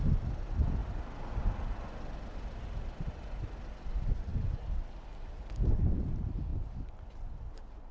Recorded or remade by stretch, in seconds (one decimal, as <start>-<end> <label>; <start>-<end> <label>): 0.0-7.9 recorded